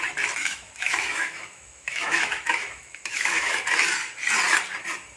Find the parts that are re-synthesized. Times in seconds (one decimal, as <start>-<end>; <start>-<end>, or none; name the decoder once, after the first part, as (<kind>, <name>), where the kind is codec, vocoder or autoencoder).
0.4-3.5 (autoencoder, DAC-VAE)